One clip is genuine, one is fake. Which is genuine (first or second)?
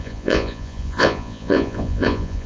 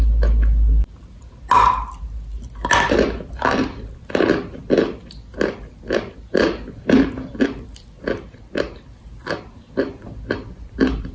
second